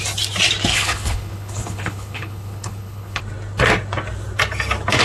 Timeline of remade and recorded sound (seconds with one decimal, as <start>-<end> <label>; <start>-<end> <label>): 0.0-0.7 recorded; 0.7-3.2 remade; 3.2-5.0 recorded